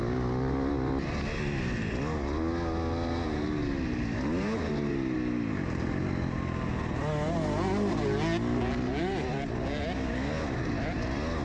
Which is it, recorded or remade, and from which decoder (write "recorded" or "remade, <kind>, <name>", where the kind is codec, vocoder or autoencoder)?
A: recorded